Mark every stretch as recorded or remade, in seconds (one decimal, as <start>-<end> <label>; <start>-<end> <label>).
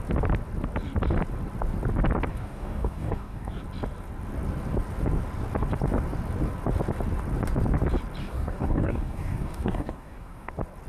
0.0-2.3 recorded; 2.3-3.6 remade; 3.6-8.2 recorded; 8.2-10.5 remade; 10.5-10.9 recorded